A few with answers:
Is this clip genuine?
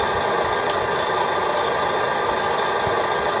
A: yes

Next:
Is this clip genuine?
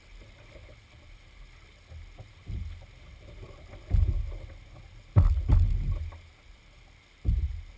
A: yes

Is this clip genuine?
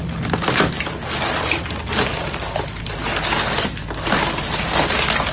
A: yes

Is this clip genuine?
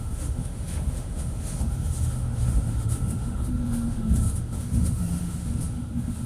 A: no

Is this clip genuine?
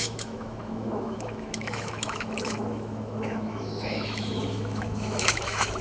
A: no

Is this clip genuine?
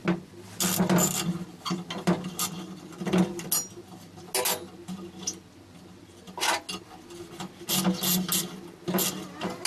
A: yes